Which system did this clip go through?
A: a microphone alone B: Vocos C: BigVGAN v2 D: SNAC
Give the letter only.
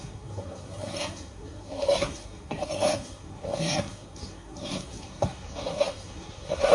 D